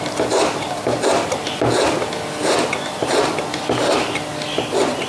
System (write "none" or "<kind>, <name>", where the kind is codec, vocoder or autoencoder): none